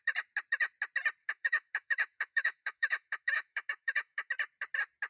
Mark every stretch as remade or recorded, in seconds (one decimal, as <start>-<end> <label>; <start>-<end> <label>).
0.0-1.2 recorded; 1.2-4.3 remade; 4.3-5.1 recorded